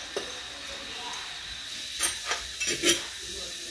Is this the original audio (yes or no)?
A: yes